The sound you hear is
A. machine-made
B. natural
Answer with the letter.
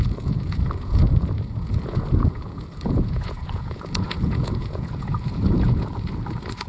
A